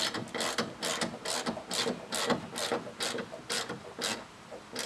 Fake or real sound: real